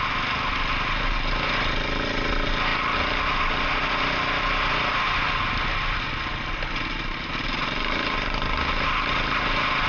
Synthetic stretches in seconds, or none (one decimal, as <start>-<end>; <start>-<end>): none